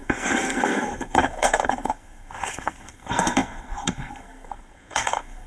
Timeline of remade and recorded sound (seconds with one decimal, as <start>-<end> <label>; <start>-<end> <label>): 0.0-5.5 remade